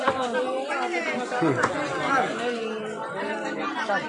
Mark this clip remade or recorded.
recorded